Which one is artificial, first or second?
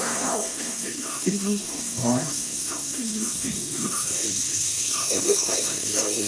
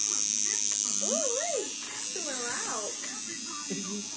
first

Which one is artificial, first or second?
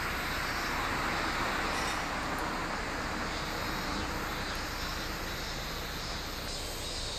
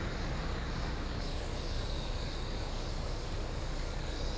second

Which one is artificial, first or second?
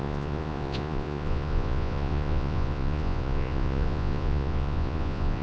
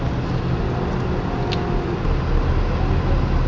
first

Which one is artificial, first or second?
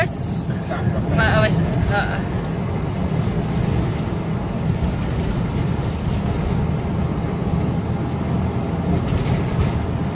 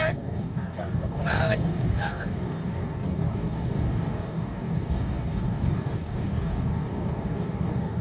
second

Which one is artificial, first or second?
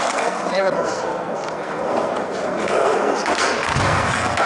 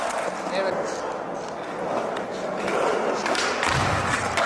first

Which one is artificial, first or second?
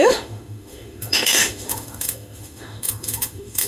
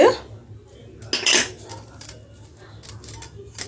first